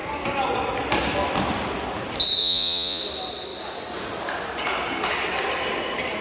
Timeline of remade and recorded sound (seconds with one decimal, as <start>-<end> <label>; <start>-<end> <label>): 0.0-2.4 recorded; 2.4-3.0 remade; 3.0-6.2 recorded